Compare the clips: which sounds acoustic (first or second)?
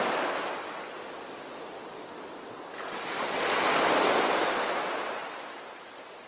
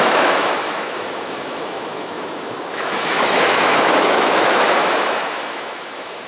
first